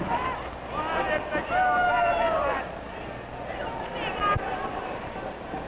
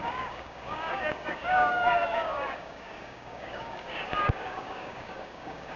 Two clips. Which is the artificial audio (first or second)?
second